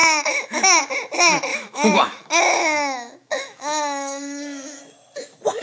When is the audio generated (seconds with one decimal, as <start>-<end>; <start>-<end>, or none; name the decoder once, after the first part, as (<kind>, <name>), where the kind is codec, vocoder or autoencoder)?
0.0-0.8 (autoencoder, DAC-VAE); 1.5-4.8